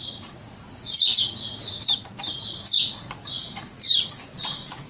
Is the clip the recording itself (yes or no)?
no